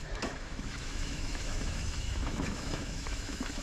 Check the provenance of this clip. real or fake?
fake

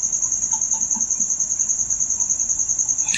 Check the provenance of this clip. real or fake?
real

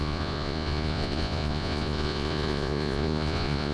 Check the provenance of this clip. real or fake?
fake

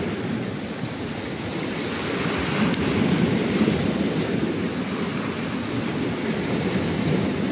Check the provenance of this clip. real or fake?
fake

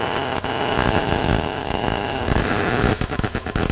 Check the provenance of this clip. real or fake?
fake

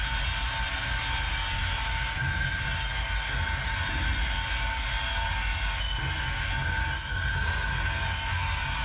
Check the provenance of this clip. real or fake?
real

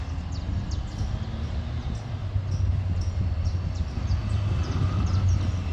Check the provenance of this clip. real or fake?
real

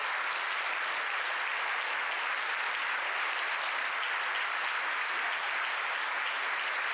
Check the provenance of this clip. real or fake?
real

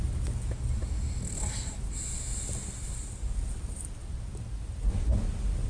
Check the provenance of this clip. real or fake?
real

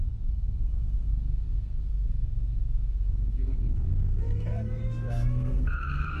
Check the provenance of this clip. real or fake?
fake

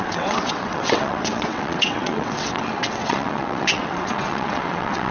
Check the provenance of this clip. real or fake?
fake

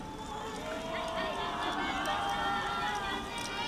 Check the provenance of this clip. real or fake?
real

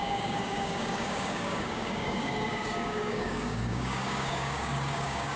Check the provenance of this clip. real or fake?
fake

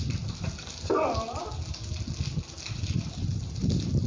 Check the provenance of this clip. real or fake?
real